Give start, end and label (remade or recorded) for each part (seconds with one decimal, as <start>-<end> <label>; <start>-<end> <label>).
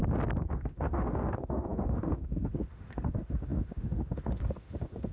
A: 0.0-0.5 recorded; 0.5-5.1 remade